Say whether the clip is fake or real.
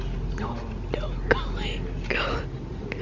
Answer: real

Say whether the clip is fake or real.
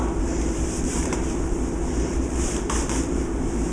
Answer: fake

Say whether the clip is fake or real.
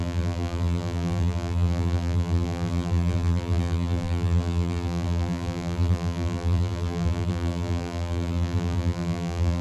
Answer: fake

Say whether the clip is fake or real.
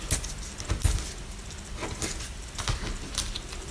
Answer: real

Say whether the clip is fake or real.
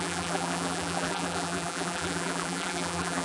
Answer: fake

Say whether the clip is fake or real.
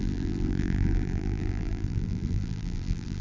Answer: fake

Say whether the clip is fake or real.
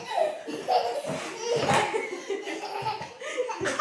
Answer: real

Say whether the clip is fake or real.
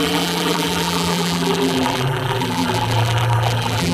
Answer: fake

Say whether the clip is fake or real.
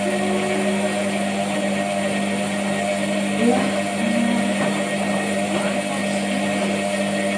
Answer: real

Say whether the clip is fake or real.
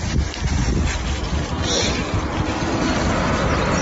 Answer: real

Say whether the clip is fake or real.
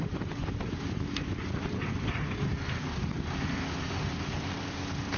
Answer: real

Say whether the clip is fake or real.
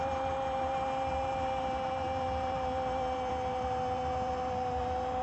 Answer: fake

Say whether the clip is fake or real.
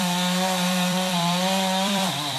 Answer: fake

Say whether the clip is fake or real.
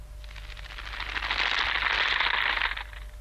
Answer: real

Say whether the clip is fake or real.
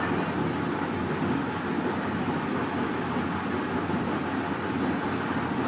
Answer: real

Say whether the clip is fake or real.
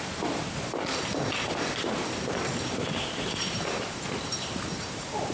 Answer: fake